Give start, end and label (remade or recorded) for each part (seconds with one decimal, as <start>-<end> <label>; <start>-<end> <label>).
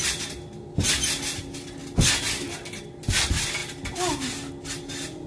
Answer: 0.0-5.3 recorded